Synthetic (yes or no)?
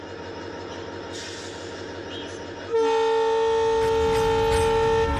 no